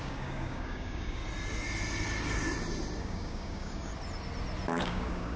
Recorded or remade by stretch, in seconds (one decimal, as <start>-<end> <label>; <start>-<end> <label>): 0.0-1.2 remade; 1.2-3.0 recorded; 3.0-3.9 remade; 3.9-4.8 recorded; 4.8-5.4 remade